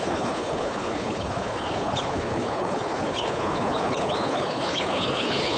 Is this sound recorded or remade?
remade